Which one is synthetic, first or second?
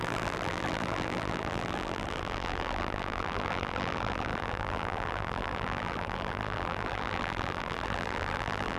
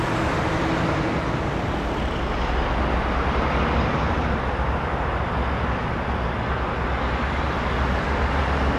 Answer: first